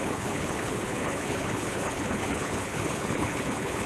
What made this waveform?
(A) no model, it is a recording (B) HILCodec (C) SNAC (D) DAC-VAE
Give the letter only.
B